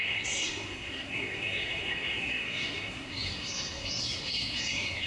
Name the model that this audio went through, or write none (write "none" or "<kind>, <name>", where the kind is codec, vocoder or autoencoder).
codec, SNAC